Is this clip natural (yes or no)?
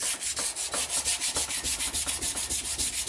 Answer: yes